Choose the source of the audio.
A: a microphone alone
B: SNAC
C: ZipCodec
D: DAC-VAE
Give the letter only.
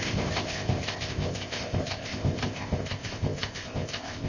C